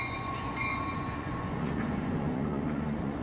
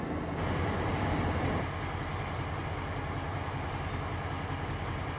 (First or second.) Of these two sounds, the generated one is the first